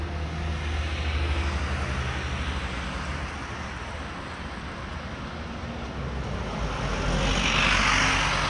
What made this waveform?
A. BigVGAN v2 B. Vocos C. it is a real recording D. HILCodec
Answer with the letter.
C